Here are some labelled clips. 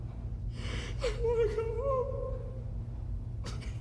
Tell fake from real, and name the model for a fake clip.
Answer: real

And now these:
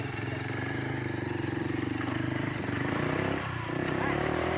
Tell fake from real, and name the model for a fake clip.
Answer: fake, vocoder, BigVGAN v2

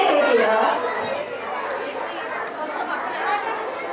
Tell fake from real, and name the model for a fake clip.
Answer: real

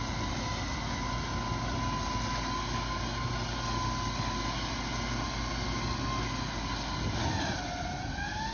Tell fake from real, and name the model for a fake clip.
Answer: real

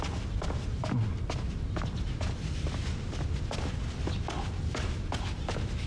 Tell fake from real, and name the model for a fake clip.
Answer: real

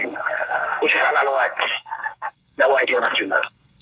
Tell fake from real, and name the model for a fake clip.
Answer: fake, codec, SNAC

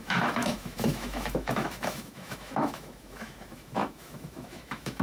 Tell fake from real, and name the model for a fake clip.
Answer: fake, autoencoder, DAC-VAE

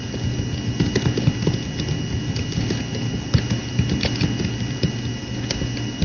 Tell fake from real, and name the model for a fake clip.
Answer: real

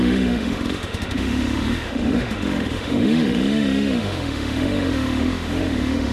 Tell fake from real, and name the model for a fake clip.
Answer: fake, autoencoder, DAC-VAE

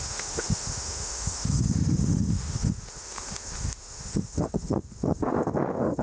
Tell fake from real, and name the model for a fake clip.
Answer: fake, autoencoder, DAC-VAE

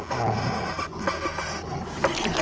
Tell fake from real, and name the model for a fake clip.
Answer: real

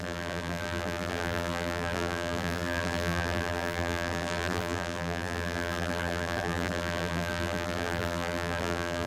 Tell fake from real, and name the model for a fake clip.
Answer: fake, vocoder, BigVGAN v2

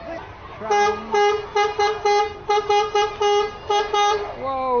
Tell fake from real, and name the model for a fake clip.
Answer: real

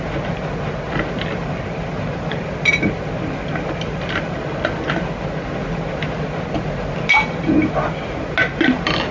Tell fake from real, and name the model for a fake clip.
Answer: real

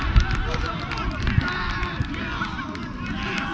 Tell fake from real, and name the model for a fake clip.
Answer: real